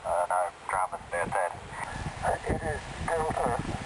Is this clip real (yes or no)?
yes